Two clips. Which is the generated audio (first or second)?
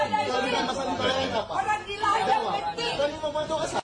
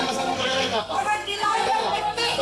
second